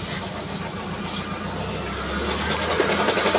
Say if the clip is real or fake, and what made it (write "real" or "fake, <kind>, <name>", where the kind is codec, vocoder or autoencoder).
real